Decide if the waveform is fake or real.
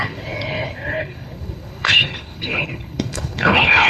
fake